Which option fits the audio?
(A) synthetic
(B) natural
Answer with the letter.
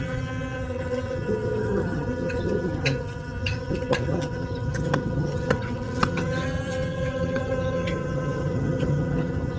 A